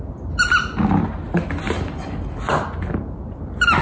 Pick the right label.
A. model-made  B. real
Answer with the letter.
B